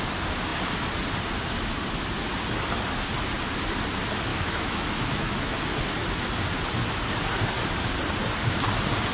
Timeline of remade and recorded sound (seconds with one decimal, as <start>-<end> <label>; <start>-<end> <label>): 0.0-4.3 recorded; 4.3-5.6 remade; 5.6-9.1 recorded